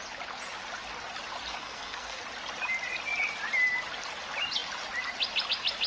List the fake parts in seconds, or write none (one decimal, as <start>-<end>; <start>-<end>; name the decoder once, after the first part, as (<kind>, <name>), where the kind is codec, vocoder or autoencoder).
1.5-2.2 (codec, SNAC)